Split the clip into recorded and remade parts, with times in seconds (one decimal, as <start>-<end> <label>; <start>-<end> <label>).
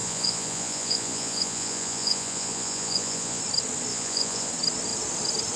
0.0-3.4 remade; 3.4-3.9 recorded; 3.9-4.5 remade; 4.5-5.6 recorded